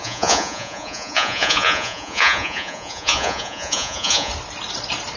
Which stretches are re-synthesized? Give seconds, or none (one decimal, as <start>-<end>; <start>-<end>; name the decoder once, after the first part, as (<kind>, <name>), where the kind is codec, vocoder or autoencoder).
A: 0.0-4.3 (vocoder, Vocos)